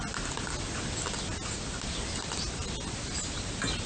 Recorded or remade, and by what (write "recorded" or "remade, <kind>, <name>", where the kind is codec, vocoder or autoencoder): recorded